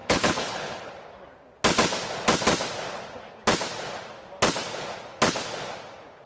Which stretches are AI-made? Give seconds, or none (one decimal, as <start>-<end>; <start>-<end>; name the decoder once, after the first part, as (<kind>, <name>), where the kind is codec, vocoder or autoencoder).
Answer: 0.0-0.9 (codec, HILCodec)